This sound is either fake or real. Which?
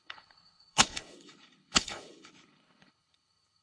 fake